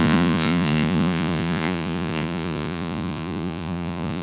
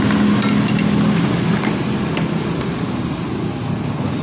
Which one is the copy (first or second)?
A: first